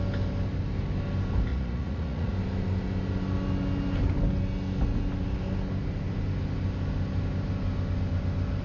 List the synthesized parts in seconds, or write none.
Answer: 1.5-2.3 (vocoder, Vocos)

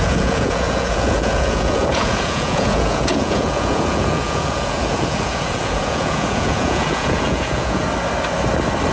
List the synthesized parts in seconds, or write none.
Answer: 0.0-7.8 (vocoder, Vocos)

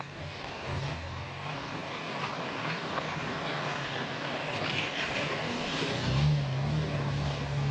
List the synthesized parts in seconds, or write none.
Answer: 0.0-7.7 (codec, DAC)

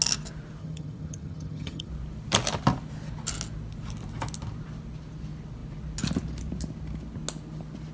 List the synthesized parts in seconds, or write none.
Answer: 0.6-1.9 (vocoder, HiFi-GAN)